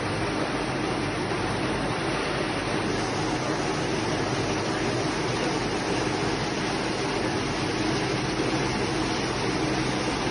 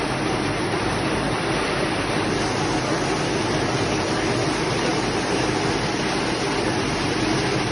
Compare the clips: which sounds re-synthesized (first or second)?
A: second